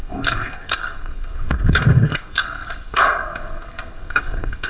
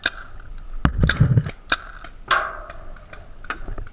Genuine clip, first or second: second